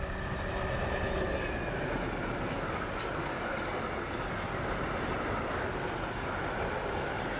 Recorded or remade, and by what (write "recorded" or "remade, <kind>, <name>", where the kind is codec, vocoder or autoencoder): recorded